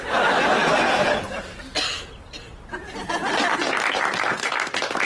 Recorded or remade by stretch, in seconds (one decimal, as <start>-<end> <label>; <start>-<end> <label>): 0.0-5.0 recorded